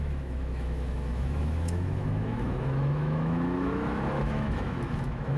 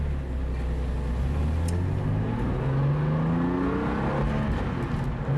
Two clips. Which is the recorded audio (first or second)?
second